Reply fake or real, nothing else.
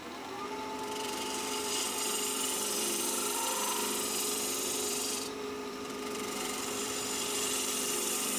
fake